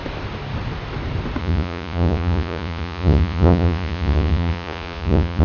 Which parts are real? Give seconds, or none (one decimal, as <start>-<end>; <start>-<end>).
0.0-1.4